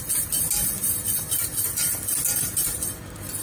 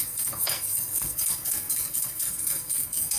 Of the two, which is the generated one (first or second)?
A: second